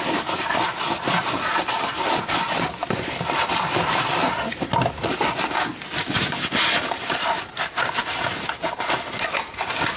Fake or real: real